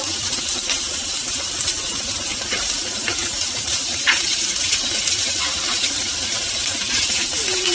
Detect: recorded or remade recorded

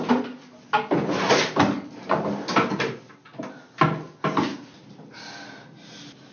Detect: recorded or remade recorded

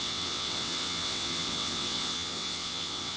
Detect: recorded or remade remade